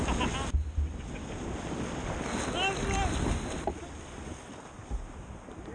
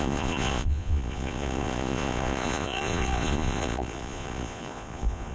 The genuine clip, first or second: first